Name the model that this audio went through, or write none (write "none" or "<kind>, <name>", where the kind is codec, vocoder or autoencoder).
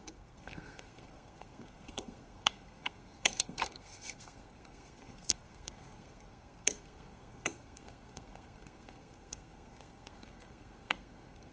codec, SNAC